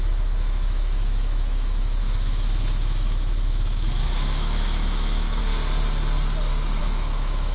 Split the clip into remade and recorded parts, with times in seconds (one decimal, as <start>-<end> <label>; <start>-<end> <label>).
0.0-5.4 remade; 5.4-6.8 recorded; 6.8-7.5 remade